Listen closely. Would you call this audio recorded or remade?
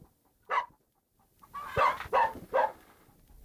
recorded